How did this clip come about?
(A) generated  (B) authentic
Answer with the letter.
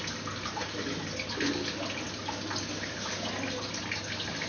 B